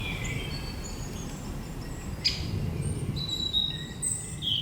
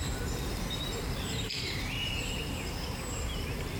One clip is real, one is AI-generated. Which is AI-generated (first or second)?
second